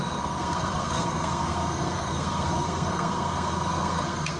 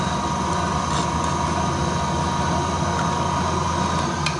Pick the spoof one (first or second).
first